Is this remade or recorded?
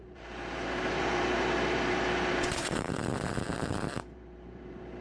remade